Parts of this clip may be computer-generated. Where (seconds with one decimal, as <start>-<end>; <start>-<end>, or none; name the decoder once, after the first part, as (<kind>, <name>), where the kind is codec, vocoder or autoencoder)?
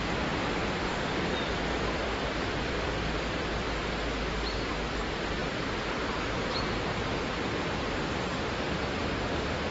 0.6-3.8 (vocoder, BigVGAN v2); 5.4-9.7